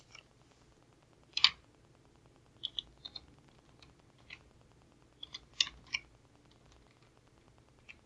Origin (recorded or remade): recorded